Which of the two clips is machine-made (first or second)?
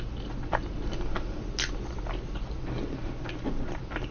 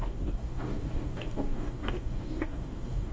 second